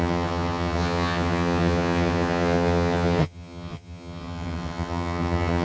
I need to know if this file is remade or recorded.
remade